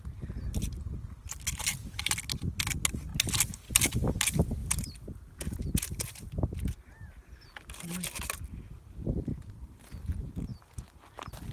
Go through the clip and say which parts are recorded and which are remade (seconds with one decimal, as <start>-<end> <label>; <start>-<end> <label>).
0.0-9.3 recorded; 9.3-9.9 remade; 9.9-11.5 recorded